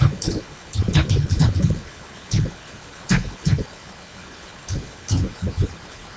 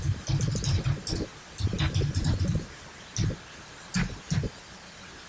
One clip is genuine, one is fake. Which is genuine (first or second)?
second